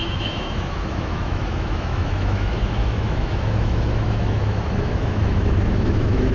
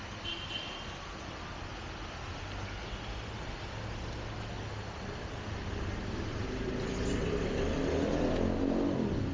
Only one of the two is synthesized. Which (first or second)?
first